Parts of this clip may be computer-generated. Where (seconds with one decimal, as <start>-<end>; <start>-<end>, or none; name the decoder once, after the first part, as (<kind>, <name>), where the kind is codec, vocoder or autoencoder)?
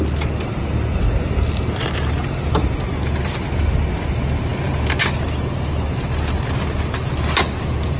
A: none